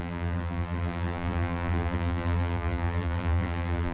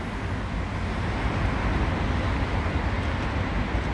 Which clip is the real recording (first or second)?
second